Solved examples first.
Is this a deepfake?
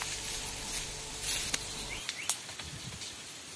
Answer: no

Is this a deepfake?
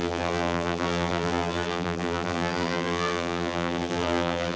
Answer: yes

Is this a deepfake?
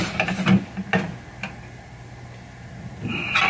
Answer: no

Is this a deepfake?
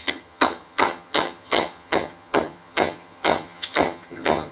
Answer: yes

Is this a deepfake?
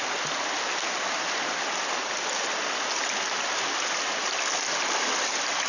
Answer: no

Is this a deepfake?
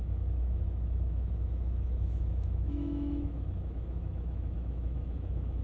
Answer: yes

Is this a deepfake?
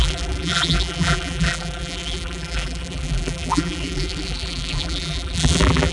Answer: yes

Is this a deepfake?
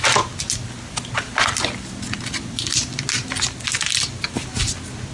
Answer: no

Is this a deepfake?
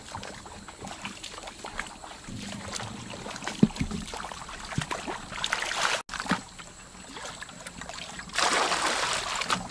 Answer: no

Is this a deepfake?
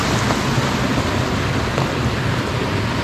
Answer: no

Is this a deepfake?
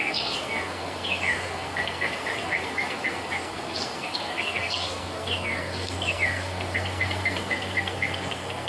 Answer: yes